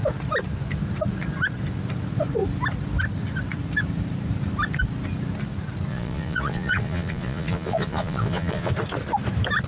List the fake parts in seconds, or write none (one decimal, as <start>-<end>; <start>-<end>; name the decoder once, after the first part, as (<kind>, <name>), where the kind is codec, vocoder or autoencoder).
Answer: 5.9-8.7 (vocoder, Vocos)

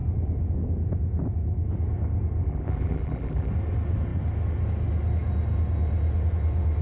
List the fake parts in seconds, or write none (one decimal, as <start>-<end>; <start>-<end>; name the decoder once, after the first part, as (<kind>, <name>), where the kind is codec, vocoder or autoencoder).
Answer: 2.4-3.5 (vocoder, BigVGAN v2)